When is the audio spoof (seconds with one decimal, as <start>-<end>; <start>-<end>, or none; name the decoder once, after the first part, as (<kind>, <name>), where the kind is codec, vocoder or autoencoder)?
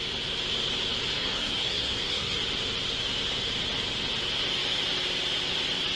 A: 1.1-2.4 (codec, SNAC)